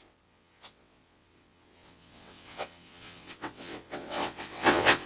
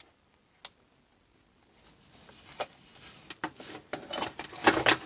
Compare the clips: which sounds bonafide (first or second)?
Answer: second